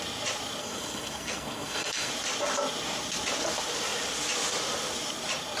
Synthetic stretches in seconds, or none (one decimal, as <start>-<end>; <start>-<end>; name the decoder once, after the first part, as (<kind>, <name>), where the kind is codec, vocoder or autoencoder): 0.6-2.1 (codec, SNAC)